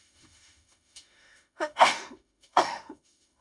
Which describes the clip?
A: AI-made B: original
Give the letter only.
A